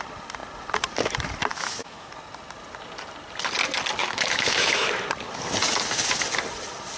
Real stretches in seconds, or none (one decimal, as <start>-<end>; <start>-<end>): 0.0-1.5; 2.1-4.0; 4.9-7.0